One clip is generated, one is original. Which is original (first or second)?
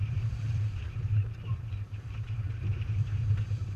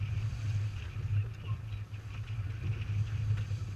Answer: second